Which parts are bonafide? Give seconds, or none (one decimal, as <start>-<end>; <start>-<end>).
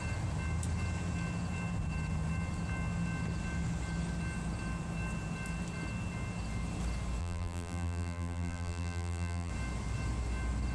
0.0-7.2; 9.5-10.7